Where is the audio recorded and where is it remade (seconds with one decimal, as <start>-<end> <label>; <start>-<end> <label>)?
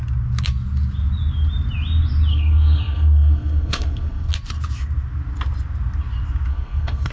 0.0-2.3 recorded; 2.3-4.3 remade; 4.3-6.5 recorded; 6.5-7.1 remade